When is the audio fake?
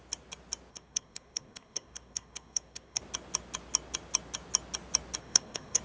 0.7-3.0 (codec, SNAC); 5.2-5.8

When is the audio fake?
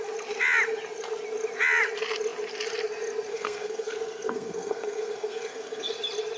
3.3-5.9 (codec, SNAC)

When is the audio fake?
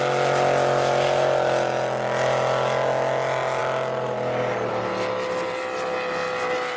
none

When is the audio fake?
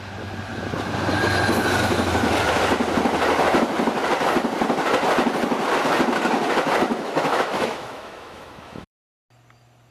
6.9-9.1 (autoencoder, DAC-VAE)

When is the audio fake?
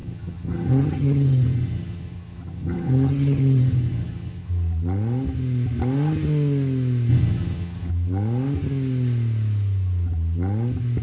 0.0-4.5 (vocoder, HiFi-GAN); 7.1-7.9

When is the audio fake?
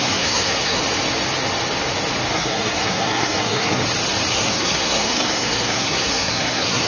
0.0-0.8 (codec, SNAC); 2.3-3.8; 4.3-6.9